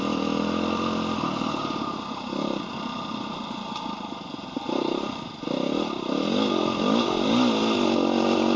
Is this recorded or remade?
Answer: recorded